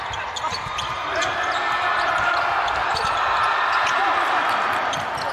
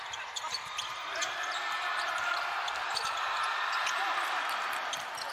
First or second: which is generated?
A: second